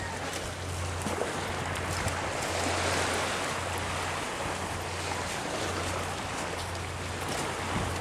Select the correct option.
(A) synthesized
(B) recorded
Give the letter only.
B